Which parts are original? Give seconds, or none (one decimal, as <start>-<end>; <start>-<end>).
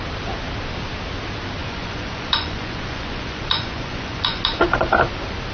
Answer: 0.0-1.6; 4.9-5.5